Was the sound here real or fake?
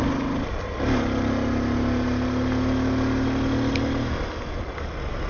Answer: real